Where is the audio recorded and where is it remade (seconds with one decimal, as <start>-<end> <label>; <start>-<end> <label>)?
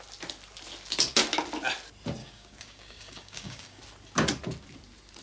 0.0-2.2 recorded; 2.2-3.8 remade; 3.8-5.2 recorded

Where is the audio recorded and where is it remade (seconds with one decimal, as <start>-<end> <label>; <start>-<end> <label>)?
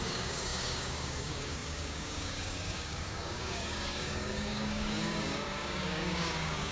0.0-6.7 remade